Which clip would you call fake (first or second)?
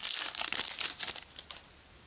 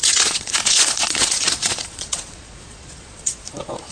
second